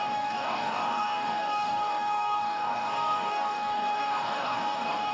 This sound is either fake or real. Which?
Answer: fake